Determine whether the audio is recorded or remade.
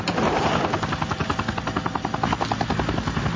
recorded